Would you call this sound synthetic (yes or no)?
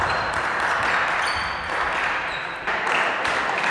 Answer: no